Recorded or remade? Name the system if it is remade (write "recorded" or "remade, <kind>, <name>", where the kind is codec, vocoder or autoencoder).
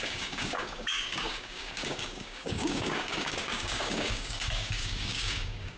remade, codec, DAC